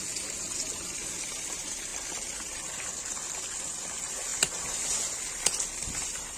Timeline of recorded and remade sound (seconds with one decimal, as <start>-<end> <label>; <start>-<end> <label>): 0.0-6.4 recorded